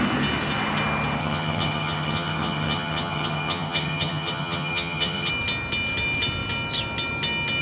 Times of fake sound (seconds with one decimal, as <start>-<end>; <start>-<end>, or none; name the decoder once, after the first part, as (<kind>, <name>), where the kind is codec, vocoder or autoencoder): 1.2-5.3 (vocoder, HiFi-GAN)